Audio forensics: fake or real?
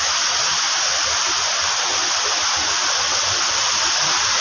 real